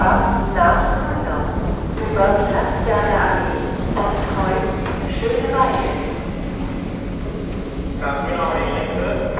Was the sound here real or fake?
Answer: real